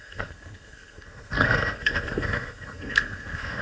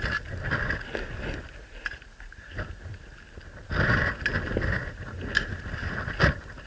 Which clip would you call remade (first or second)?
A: first